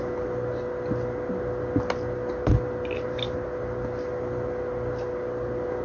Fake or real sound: real